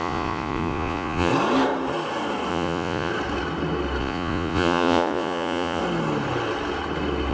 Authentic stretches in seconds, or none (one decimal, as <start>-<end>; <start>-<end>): 1.3-2.5; 3.1-4.0; 5.8-7.3